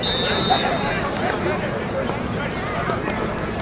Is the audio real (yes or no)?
yes